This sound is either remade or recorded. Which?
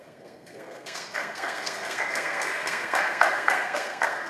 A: remade